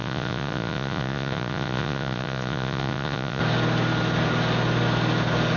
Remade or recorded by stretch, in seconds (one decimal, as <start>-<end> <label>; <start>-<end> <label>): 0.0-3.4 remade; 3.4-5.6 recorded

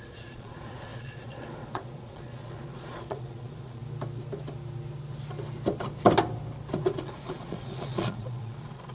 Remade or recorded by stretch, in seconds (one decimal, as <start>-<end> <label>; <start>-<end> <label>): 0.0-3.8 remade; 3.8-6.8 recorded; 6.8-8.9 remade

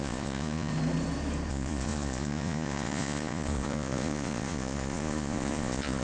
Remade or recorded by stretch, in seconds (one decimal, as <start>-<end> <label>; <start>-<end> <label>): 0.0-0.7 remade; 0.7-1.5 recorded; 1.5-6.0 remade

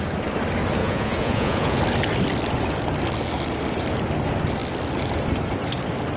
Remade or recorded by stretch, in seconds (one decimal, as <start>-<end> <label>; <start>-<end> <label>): 0.0-0.8 recorded; 0.8-1.8 remade; 1.8-6.2 recorded

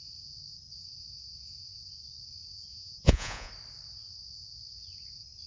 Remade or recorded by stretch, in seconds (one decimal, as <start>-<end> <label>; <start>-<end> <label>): 0.0-2.7 recorded; 2.7-3.5 remade; 3.5-5.5 recorded